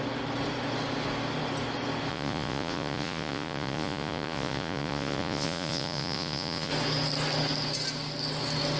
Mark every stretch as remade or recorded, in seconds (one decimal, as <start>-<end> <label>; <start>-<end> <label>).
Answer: 0.0-2.1 recorded; 2.1-6.7 remade; 6.7-8.8 recorded